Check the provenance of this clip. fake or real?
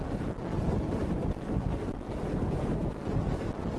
real